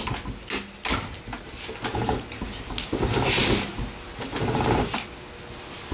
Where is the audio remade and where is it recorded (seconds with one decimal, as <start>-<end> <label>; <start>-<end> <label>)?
0.0-5.9 recorded

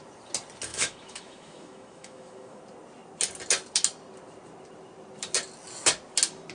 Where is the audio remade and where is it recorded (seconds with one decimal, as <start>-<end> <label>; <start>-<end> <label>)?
0.0-0.7 recorded; 0.7-2.6 remade; 2.6-6.5 recorded